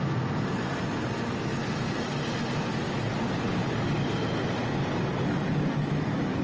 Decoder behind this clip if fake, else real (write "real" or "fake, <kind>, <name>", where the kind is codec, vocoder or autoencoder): real